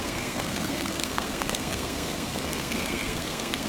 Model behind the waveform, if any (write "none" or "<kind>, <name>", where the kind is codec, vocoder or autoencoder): codec, SNAC